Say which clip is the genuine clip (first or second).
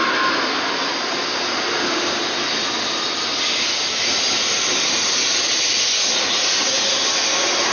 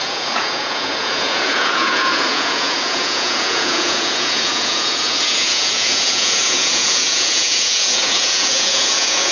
first